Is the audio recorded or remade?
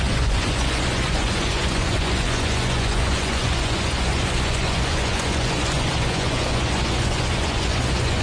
remade